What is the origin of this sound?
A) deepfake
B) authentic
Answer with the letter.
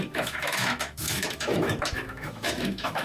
A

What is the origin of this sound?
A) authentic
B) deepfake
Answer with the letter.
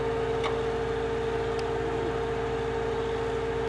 A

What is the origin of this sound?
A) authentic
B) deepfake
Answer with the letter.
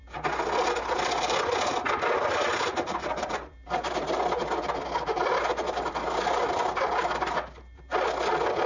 A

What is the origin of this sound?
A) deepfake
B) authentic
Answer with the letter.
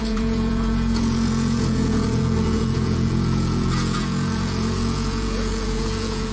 A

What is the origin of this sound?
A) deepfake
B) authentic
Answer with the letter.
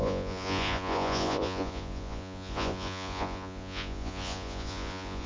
A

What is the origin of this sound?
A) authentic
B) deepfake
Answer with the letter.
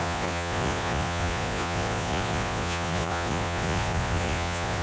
B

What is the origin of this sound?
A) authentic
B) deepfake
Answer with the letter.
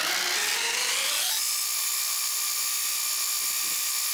A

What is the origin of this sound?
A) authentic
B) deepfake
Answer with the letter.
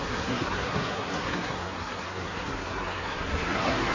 B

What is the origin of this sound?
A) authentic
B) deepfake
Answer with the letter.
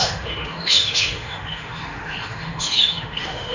B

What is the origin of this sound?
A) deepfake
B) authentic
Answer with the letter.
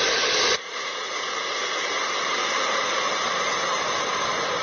B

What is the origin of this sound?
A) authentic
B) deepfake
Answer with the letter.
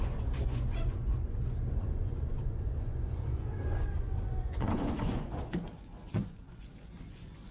B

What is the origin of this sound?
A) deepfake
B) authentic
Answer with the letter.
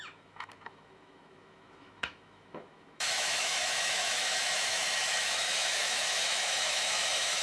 A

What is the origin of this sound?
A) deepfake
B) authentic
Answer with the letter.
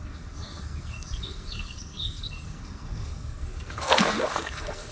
A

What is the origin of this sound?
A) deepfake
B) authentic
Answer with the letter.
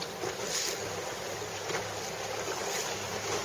B